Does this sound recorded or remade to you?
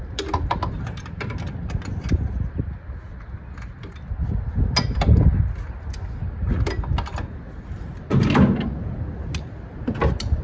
recorded